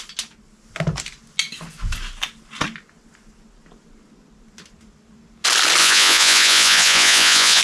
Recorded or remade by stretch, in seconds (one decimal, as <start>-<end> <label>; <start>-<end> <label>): 0.0-5.8 recorded; 5.8-7.6 remade